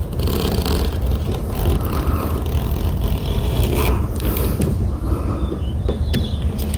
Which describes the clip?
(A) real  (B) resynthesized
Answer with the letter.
A